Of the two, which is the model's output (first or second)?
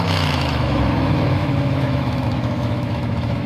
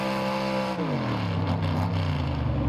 first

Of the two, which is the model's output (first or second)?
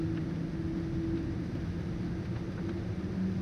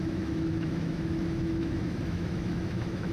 second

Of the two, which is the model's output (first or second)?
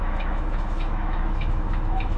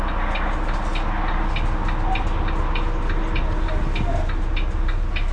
first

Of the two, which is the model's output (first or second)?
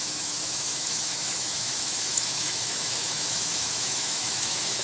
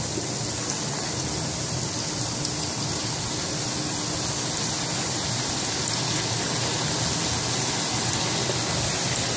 first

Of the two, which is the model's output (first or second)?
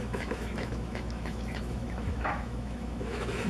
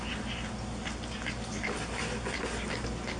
first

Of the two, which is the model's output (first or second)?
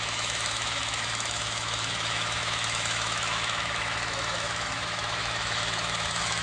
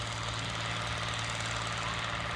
first